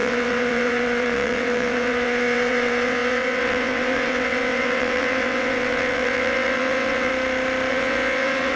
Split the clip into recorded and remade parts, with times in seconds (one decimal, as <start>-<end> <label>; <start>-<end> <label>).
0.0-7.1 remade; 7.1-7.7 recorded; 7.7-8.6 remade